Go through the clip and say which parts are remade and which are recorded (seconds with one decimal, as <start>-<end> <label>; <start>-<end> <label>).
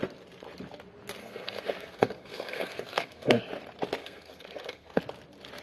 0.0-1.2 recorded; 1.2-3.4 remade; 3.4-4.0 recorded; 4.0-5.0 remade; 5.0-5.6 recorded